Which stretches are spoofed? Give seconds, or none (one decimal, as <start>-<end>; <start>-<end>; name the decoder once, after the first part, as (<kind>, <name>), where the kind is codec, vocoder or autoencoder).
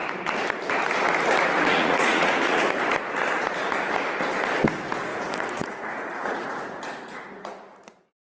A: 1.7-2.6 (vocoder, Vocos); 5.1-7.5